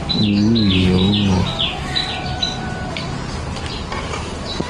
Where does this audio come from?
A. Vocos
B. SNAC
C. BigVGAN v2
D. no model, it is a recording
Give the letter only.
D